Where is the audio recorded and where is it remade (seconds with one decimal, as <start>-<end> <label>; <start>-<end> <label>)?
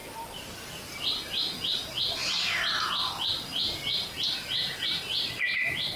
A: 0.0-6.0 recorded